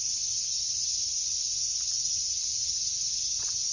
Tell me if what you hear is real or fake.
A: fake